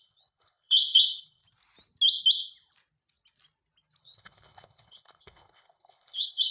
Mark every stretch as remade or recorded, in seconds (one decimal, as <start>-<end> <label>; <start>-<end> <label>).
0.0-1.4 remade; 1.4-4.0 recorded; 4.0-6.5 remade